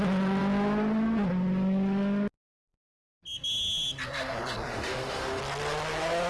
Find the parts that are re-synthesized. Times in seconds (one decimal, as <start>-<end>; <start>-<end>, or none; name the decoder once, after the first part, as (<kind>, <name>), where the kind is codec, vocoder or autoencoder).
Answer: 4.7-5.4 (autoencoder, DAC-VAE)